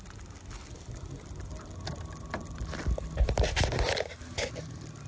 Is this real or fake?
real